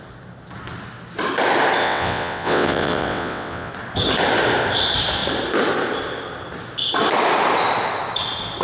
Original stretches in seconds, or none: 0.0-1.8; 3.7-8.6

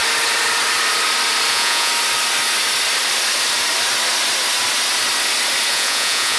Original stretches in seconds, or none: 0.0-1.5; 1.9-5.7

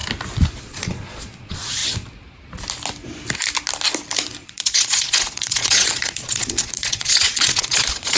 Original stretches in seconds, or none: 0.0-0.6; 1.8-4.4

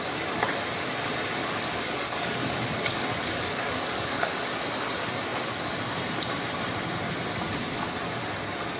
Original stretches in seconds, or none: 0.0-1.4; 4.3-8.8

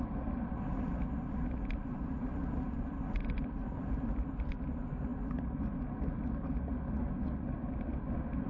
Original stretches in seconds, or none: 0.0-8.5

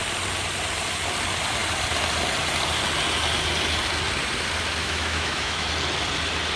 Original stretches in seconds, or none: 0.0-4.8; 5.7-6.6